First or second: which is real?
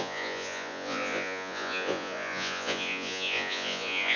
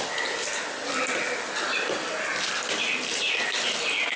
second